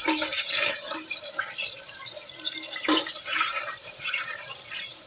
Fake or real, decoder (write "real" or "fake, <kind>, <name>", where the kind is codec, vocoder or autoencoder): fake, vocoder, BigVGAN v2